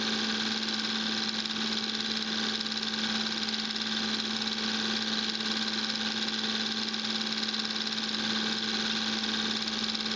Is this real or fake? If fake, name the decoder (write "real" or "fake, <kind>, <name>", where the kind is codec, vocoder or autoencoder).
real